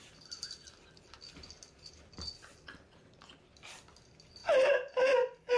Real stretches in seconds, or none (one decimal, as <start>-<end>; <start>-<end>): 0.0-5.6